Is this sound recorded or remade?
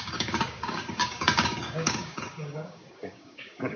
remade